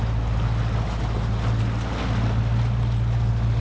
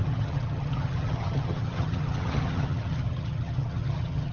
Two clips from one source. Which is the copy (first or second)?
second